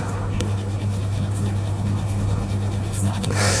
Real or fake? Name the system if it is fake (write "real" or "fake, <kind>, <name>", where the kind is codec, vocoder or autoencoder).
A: fake, codec, SNAC